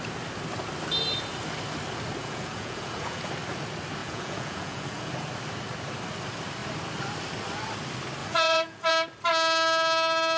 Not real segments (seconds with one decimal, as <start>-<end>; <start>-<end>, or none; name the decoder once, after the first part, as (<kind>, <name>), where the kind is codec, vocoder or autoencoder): 2.2-3.3 (vocoder, Vocos); 4.0-5.1; 8.2-8.9